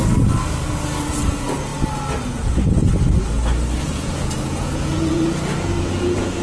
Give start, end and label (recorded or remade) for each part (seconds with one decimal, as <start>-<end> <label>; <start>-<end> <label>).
0.0-1.1 recorded; 1.1-1.7 remade; 1.7-2.3 recorded; 2.3-2.8 remade; 2.8-3.8 recorded; 3.8-6.4 remade